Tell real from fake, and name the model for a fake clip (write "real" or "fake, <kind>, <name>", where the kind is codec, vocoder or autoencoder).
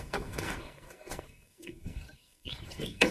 fake, codec, SNAC